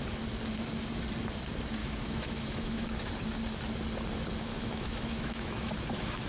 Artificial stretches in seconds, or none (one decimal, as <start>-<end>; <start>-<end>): 1.8-3.1; 4.5-5.7